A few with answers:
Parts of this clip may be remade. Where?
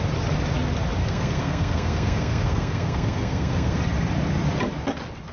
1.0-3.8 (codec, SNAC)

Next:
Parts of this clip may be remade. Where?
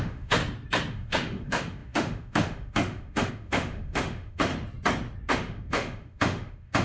0.0-0.4 (autoencoder, DAC-VAE); 0.9-4.5; 5.3-6.8